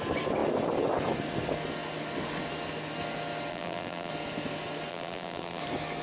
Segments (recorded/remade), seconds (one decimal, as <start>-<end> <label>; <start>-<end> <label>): 0.0-3.5 recorded; 3.5-4.1 remade; 4.1-4.9 recorded; 4.9-5.6 remade; 5.6-6.0 recorded